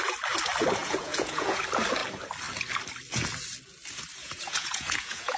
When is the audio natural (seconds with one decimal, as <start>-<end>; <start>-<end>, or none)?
0.0-0.8; 1.6-4.2